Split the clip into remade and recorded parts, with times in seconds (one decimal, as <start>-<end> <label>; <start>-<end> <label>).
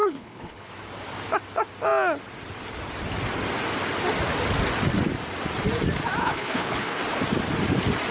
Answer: 0.0-0.7 remade; 0.7-6.2 recorded; 6.2-7.0 remade; 7.0-8.1 recorded